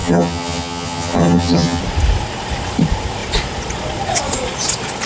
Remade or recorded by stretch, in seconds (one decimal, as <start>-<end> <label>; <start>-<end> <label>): 0.0-1.8 remade; 1.8-5.1 recorded